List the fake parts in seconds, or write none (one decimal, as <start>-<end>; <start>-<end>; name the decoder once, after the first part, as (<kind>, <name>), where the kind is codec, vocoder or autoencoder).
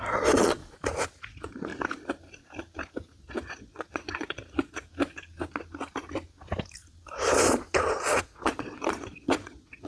0.0-0.6 (vocoder, Vocos); 1.2-1.7; 3.2-4.9; 7.9-9.9